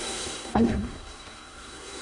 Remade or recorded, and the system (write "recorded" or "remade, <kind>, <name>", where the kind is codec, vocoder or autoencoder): remade, codec, SNAC